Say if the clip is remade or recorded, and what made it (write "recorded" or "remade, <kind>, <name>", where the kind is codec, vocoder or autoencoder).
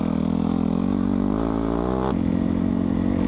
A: recorded